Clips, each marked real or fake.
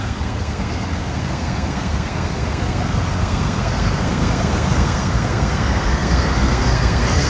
fake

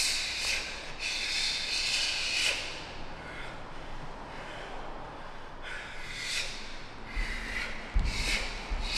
real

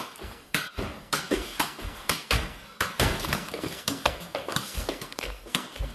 fake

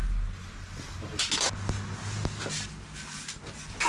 real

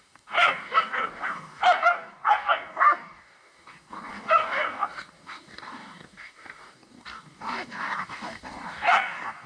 fake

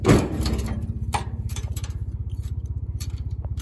fake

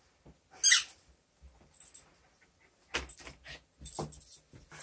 real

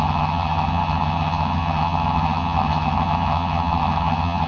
fake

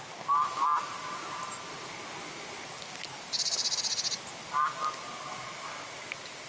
real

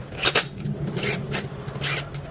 real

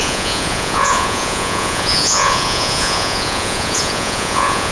fake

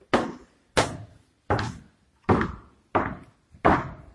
real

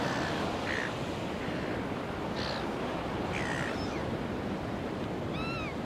real